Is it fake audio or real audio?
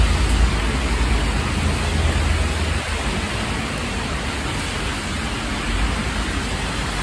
real